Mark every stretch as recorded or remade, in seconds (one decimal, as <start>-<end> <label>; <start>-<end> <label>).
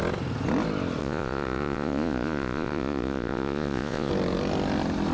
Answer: 0.0-1.0 recorded; 1.0-4.1 remade; 4.1-5.1 recorded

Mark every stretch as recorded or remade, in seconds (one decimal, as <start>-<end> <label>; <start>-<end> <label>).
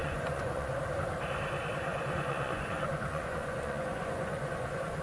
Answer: 0.0-0.8 remade; 0.8-1.9 recorded; 1.9-5.0 remade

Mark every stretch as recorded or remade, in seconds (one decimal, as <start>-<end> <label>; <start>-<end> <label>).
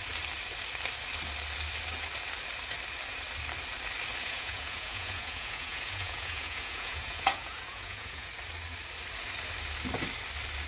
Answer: 0.0-4.2 recorded; 4.2-8.3 remade; 8.3-10.7 recorded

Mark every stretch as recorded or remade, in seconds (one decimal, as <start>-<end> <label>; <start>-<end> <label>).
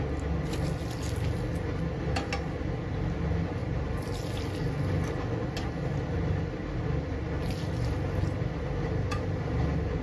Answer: 0.0-10.0 recorded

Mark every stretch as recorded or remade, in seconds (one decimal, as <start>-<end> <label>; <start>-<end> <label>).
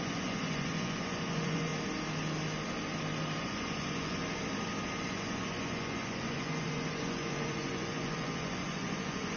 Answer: 0.0-1.7 remade; 1.7-3.4 recorded; 3.4-4.2 remade; 4.2-5.0 recorded; 5.0-9.4 remade